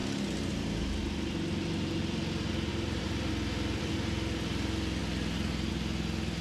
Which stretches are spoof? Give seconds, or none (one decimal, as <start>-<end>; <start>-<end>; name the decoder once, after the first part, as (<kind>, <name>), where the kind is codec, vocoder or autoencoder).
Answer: 0.0-1.0 (vocoder, BigVGAN v2); 2.7-3.3